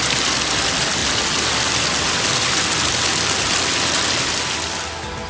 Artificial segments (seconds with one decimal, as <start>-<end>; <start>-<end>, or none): none

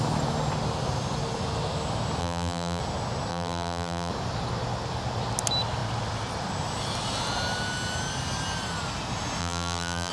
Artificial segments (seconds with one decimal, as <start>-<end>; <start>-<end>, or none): 2.2-2.8; 3.3-4.1; 9.4-10.1

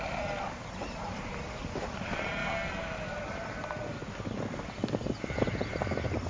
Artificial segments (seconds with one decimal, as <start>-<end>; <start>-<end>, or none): 0.0-2.4